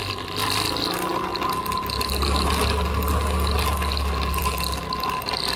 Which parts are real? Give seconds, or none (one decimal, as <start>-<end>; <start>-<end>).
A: 0.0-5.6